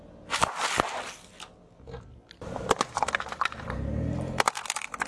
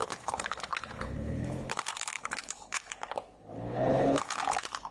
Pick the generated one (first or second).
second